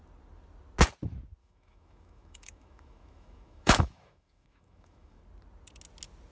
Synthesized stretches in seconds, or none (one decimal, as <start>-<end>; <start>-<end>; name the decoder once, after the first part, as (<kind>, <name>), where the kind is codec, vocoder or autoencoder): 1.4-5.2 (autoencoder, DAC-VAE)

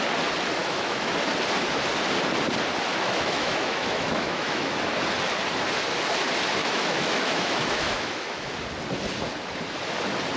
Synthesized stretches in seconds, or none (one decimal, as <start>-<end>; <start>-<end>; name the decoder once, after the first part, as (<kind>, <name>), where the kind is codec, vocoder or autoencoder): 0.6-1.1 (autoencoder, DAC-VAE); 2.9-4.8; 6.6-8.5